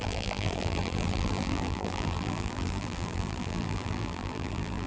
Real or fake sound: fake